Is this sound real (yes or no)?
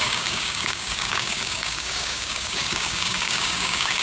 no